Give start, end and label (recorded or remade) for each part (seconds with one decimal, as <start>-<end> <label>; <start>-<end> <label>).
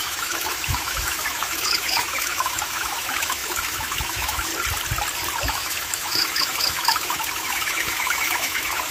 0.0-4.5 remade; 4.5-5.5 recorded; 5.5-8.9 remade